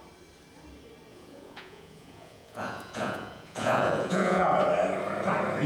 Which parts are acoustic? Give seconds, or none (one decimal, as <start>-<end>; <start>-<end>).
0.0-1.1; 4.5-5.7